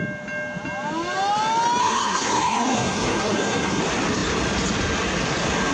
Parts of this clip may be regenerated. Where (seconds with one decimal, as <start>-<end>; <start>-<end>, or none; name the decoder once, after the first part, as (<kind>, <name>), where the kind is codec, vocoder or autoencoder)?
1.8-3.8 (codec, SNAC)